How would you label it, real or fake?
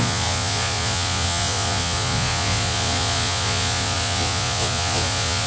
fake